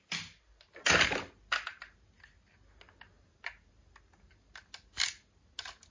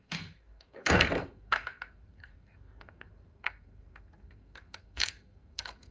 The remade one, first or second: second